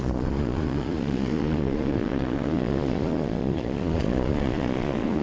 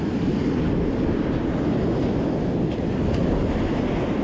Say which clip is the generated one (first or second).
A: first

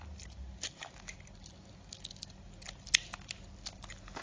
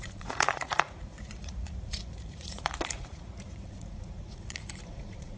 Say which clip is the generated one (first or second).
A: second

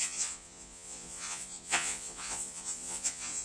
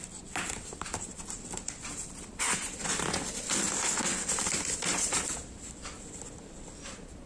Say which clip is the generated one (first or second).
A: first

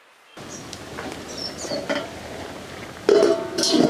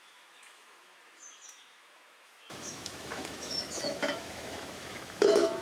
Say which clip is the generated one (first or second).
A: second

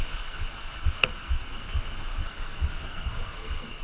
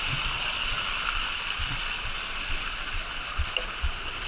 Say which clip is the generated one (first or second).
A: first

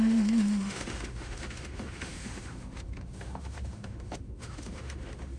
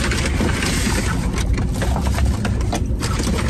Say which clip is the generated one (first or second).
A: first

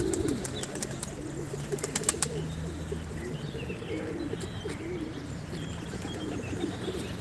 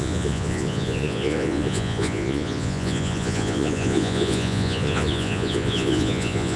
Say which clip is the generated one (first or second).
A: second